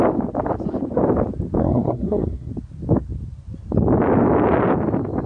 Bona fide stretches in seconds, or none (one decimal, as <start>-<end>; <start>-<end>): 0.0-1.6; 2.5-5.3